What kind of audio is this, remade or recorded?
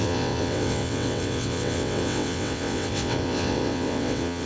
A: remade